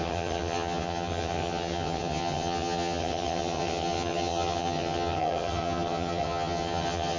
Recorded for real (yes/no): no